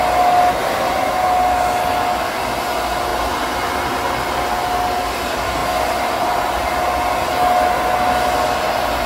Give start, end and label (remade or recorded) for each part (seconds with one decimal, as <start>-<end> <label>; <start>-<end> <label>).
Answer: 0.0-9.1 recorded